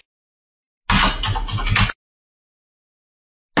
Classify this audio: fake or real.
real